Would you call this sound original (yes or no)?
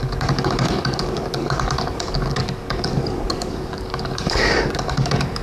no